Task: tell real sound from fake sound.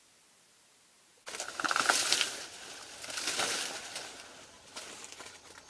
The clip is real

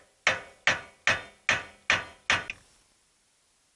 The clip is real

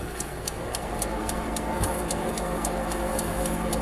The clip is fake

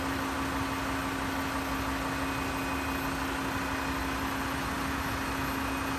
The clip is real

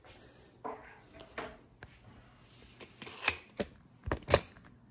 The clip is real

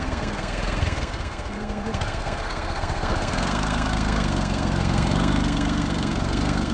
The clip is fake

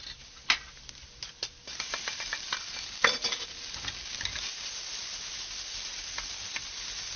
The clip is real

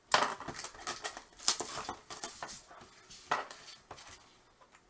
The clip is real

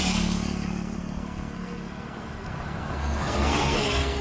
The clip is fake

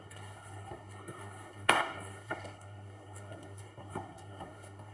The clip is fake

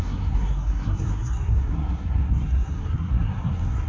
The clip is fake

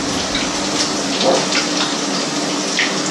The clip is real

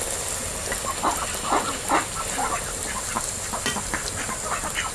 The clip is real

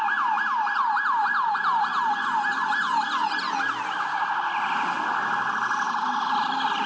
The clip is real